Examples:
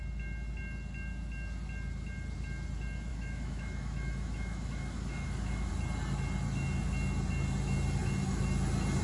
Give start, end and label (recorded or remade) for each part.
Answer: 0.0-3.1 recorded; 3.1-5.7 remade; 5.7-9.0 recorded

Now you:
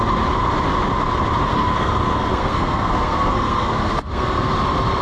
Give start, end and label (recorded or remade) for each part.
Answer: 0.0-1.5 recorded; 1.5-4.5 remade; 4.5-5.0 recorded